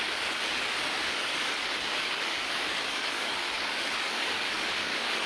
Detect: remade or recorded remade